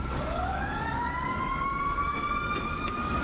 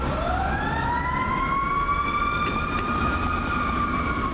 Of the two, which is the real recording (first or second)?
second